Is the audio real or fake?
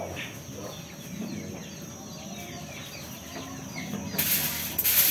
real